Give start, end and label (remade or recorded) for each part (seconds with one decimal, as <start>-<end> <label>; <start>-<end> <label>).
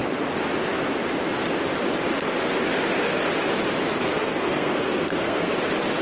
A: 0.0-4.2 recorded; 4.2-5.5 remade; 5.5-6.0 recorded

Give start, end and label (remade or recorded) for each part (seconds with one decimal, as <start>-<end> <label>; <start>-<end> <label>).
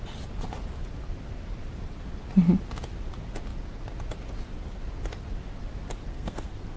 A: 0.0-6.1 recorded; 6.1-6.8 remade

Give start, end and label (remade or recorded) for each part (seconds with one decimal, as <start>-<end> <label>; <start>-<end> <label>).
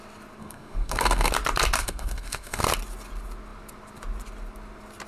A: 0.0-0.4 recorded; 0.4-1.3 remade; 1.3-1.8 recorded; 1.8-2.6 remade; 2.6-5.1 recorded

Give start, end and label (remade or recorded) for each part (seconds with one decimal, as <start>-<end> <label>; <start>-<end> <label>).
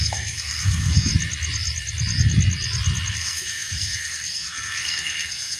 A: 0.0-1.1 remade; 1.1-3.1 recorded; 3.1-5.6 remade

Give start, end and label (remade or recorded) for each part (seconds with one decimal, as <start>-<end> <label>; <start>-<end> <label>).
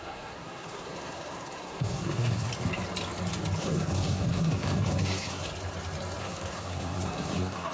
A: 0.0-2.5 remade; 2.5-3.6 recorded; 3.6-5.5 remade; 5.5-6.2 recorded; 6.2-7.7 remade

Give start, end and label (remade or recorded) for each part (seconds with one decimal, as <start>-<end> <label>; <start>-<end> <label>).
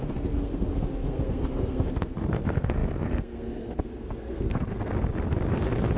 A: 0.0-4.9 remade; 4.9-6.0 recorded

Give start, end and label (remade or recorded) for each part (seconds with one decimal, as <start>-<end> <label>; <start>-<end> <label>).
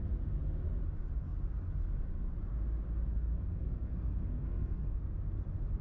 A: 0.0-3.1 recorded; 3.1-5.0 remade; 5.0-5.8 recorded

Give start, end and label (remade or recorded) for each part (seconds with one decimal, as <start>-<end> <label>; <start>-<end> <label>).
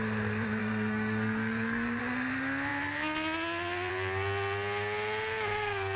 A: 0.0-0.6 recorded; 0.6-2.0 remade; 2.0-6.0 recorded